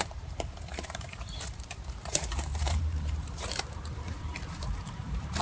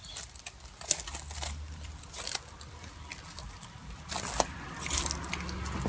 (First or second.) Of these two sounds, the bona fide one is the second